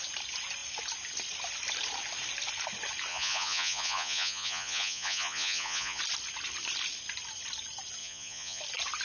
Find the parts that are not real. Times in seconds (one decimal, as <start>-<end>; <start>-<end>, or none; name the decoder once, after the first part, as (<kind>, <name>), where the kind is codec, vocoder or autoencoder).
3.1-6.0 (vocoder, Vocos); 8.0-8.6